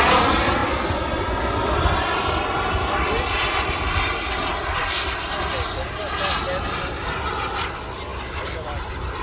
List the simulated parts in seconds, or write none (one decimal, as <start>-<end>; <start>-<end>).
none

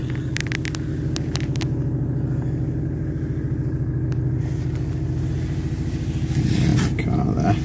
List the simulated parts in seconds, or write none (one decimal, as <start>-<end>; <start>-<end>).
none

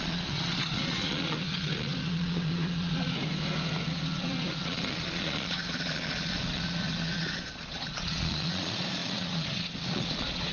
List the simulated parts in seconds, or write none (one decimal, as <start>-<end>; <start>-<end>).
0.0-3.2; 4.2-10.5

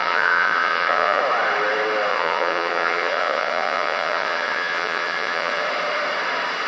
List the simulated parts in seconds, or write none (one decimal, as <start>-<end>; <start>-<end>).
0.0-1.2; 2.1-5.6